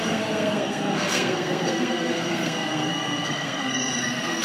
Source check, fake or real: fake